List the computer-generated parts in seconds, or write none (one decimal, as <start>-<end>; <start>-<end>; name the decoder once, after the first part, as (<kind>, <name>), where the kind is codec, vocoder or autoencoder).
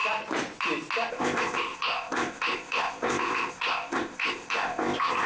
1.1-5.3 (codec, ZipCodec)